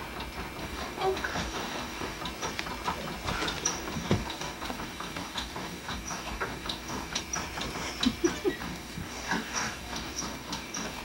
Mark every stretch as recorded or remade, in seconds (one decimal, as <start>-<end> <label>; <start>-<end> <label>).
0.0-0.6 recorded; 0.6-2.2 remade; 2.2-3.7 recorded; 3.7-7.2 remade; 7.2-8.6 recorded; 8.6-11.0 remade